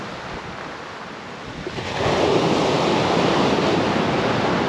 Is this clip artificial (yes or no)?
no